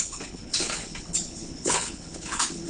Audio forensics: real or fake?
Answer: fake